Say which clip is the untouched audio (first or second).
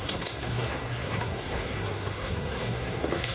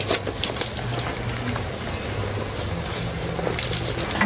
second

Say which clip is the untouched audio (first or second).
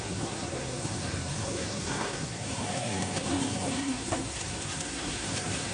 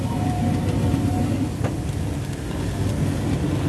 second